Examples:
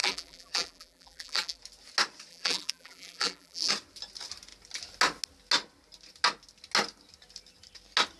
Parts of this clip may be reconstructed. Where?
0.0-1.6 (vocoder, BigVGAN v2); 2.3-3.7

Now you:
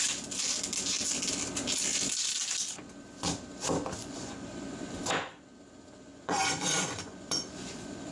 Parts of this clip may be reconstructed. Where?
4.0-5.4 (vocoder, Vocos); 6.1-8.1

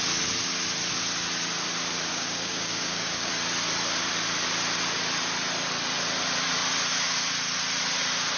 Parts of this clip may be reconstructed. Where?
2.1-3.3 (codec, DAC)

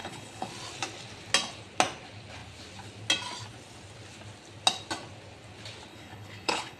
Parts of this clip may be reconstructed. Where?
0.0-0.5 (codec, HILCodec); 5.9-6.8

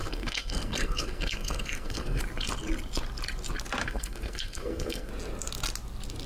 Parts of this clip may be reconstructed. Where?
0.0-2.2 (codec, SNAC); 3.8-5.1

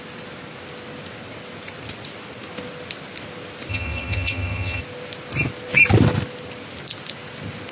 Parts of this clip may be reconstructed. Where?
3.7-4.8 (vocoder, HiFi-GAN)

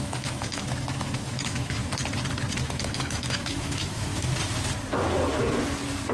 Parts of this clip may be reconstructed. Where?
0.0-1.8 (autoencoder, DAC-VAE); 2.6-4.1

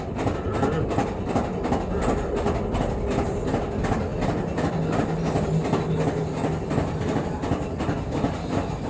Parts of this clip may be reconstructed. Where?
none